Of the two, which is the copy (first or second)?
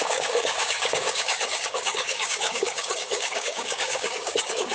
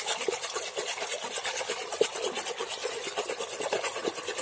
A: first